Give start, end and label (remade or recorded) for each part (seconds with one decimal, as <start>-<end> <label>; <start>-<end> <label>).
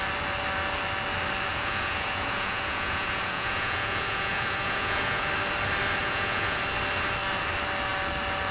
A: 0.0-1.5 recorded; 1.5-5.3 remade; 5.3-6.0 recorded; 6.0-6.6 remade; 6.6-8.5 recorded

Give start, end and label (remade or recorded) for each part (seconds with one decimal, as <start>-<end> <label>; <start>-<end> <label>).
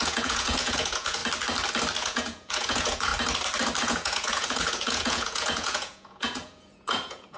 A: 0.0-1.2 remade; 1.2-2.0 recorded; 2.0-3.1 remade; 3.1-3.8 recorded; 3.8-7.4 remade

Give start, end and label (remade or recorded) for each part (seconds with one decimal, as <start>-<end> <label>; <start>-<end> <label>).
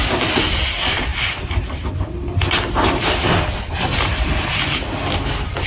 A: 0.0-5.7 recorded